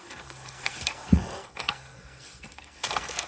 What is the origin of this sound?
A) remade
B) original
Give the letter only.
A